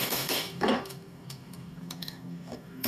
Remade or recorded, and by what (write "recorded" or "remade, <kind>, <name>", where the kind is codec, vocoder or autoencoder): remade, codec, DAC